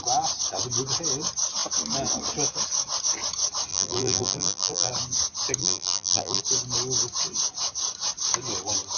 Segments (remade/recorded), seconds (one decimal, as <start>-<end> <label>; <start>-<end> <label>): 0.0-3.7 recorded; 3.7-4.9 remade; 4.9-5.6 recorded; 5.6-6.4 remade; 6.4-9.0 recorded

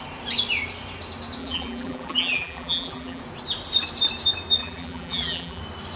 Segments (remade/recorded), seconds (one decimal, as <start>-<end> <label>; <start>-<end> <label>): 0.0-1.4 recorded; 1.4-3.2 remade; 3.2-4.6 recorded; 4.6-5.6 remade; 5.6-6.0 recorded

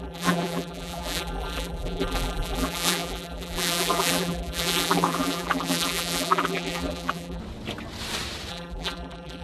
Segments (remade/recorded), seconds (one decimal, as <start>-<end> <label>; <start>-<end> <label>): 0.0-7.4 remade; 7.4-8.5 recorded; 8.5-9.4 remade

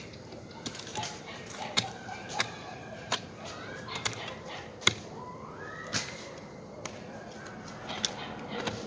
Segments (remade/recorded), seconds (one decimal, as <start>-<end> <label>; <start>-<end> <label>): 0.0-0.9 recorded; 0.9-5.2 remade; 5.2-8.9 recorded

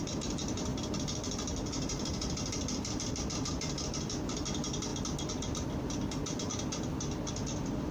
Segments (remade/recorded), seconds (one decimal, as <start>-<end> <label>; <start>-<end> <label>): 0.0-4.9 remade; 4.9-7.3 recorded; 7.3-7.9 remade

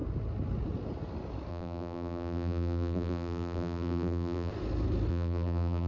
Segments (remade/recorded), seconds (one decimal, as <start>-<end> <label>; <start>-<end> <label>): 0.0-1.5 recorded; 1.5-4.5 remade; 4.5-5.1 recorded; 5.1-5.9 remade